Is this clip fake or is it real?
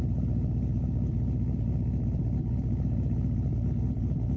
real